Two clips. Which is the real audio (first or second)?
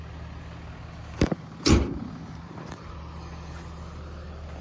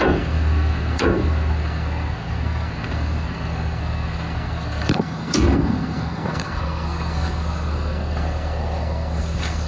first